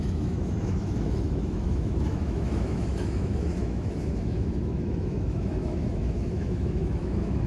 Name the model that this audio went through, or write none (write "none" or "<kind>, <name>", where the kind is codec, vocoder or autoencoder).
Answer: autoencoder, DAC-VAE